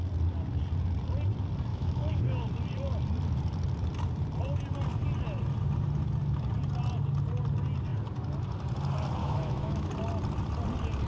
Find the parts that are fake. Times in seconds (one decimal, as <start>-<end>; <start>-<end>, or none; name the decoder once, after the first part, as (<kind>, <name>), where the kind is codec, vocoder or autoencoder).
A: 1.7-2.2 (autoencoder, DAC-VAE); 9.2-9.9